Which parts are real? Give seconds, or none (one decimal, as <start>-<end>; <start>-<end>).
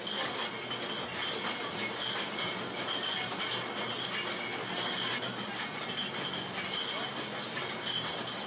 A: 0.0-8.5